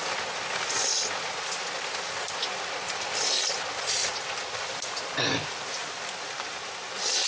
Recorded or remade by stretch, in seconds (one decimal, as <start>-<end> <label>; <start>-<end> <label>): 0.0-7.3 recorded